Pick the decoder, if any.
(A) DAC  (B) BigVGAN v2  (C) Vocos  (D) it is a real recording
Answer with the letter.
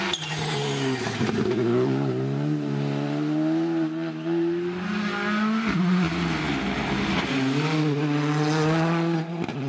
D